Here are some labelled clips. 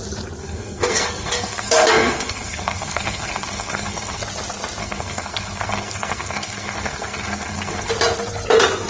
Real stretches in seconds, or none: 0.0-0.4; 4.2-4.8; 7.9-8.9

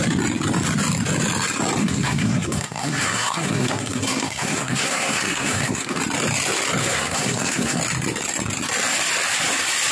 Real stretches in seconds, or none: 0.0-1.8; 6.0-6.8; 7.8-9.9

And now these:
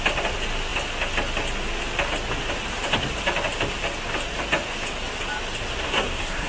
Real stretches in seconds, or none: 0.0-5.8